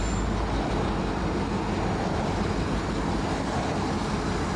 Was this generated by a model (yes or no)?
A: no